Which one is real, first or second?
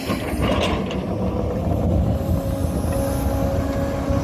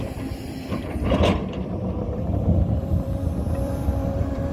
first